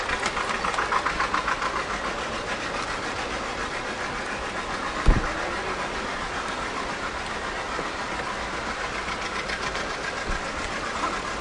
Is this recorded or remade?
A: recorded